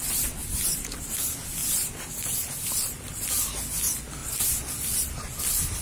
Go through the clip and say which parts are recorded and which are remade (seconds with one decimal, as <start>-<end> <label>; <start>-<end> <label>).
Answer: 0.0-0.4 recorded; 0.4-1.2 remade; 1.2-1.6 recorded; 1.6-2.5 remade; 2.5-4.2 recorded; 4.2-5.8 remade